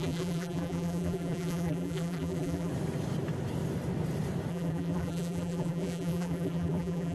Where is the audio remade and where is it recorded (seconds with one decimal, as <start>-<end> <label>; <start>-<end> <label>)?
0.0-2.7 remade; 2.7-4.5 recorded; 4.5-7.1 remade

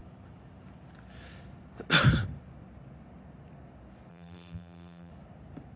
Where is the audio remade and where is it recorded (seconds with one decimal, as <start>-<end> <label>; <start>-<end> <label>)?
0.0-4.1 recorded; 4.1-5.1 remade; 5.1-5.8 recorded

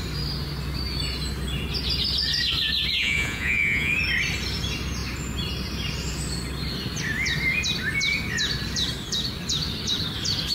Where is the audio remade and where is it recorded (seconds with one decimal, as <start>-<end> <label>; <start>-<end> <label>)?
0.0-3.0 recorded; 3.0-3.9 remade; 3.9-10.5 recorded

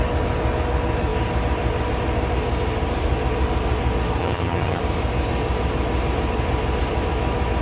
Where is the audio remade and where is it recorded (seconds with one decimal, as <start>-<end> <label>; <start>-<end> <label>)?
0.0-4.2 recorded; 4.2-4.8 remade; 4.8-7.6 recorded

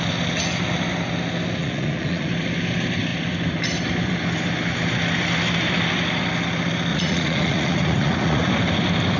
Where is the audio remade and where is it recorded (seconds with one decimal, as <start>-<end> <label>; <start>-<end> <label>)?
0.0-1.6 recorded; 1.6-2.3 remade; 2.3-6.9 recorded; 6.9-8.5 remade; 8.5-9.2 recorded

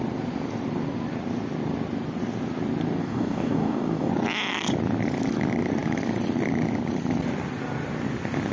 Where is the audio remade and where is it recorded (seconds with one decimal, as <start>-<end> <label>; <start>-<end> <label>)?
0.0-3.0 recorded; 3.0-4.1 remade; 4.1-8.5 recorded

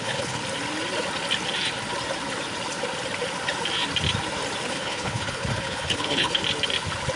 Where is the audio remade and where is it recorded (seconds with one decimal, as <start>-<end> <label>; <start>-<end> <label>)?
0.0-0.4 remade; 0.4-4.7 recorded; 4.7-6.4 remade; 6.4-7.2 recorded